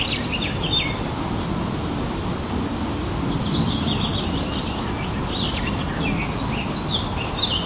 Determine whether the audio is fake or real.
real